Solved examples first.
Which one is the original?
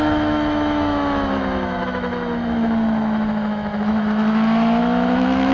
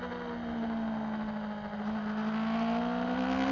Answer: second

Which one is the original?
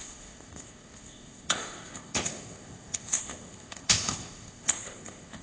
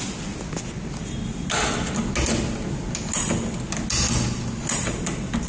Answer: second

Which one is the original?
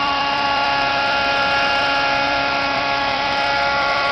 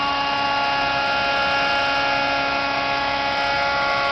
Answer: second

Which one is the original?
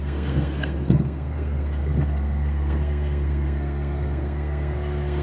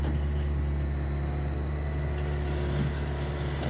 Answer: second